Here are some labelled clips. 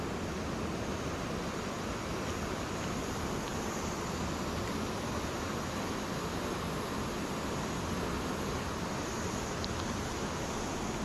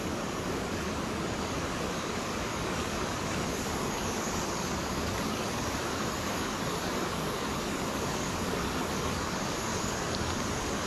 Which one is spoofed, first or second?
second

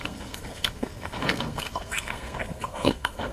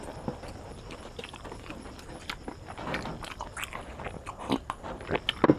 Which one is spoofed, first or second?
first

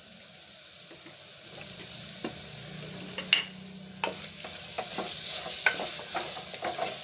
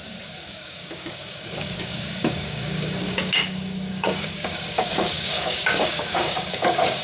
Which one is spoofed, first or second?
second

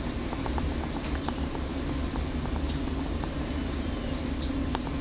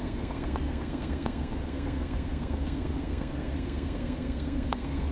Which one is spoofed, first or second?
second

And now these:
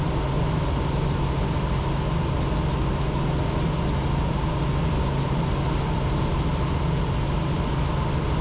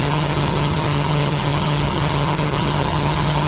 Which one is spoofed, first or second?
second